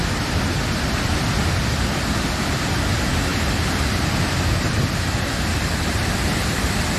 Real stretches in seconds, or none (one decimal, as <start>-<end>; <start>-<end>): 0.0-5.5; 6.6-7.0